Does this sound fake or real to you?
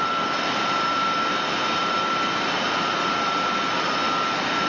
real